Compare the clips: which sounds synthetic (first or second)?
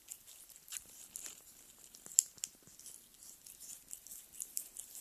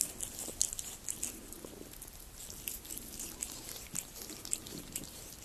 first